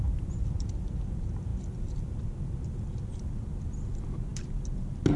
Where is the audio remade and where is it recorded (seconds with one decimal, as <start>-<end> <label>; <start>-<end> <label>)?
0.0-5.2 recorded